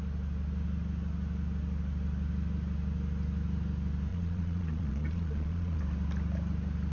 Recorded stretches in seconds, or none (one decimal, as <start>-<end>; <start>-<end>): 0.0-4.1; 5.8-6.9